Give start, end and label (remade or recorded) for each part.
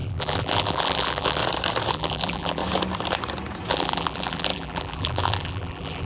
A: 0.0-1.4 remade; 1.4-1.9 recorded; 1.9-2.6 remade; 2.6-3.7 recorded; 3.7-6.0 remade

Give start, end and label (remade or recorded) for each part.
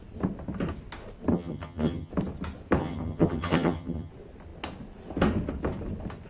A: 0.0-1.3 recorded; 1.3-2.1 remade; 2.1-2.8 recorded; 2.8-4.1 remade; 4.1-6.3 recorded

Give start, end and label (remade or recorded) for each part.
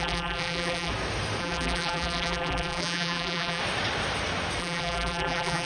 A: 0.0-0.9 remade; 0.9-1.4 recorded; 1.4-3.6 remade; 3.6-4.6 recorded; 4.6-5.6 remade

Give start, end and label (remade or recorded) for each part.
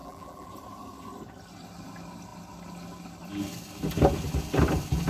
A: 0.0-0.5 remade; 0.5-5.1 recorded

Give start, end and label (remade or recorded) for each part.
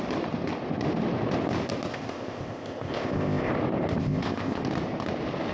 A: 0.0-1.9 recorded; 1.9-3.5 remade; 3.5-4.0 recorded; 4.0-4.6 remade; 4.6-5.5 recorded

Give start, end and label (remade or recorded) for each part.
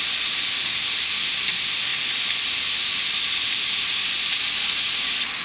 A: 0.0-5.4 recorded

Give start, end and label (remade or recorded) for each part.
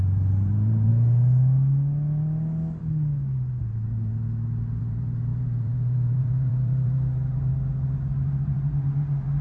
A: 0.0-0.9 remade; 0.9-3.5 recorded; 3.5-4.1 remade; 4.1-4.8 recorded; 4.8-7.5 remade; 7.5-8.2 recorded; 8.2-9.4 remade